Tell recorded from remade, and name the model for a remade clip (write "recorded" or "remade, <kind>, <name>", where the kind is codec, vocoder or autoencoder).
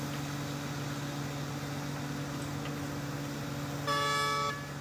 recorded